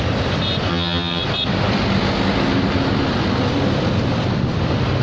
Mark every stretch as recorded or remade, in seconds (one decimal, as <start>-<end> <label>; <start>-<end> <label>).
0.0-0.7 recorded; 0.7-1.2 remade; 1.2-5.0 recorded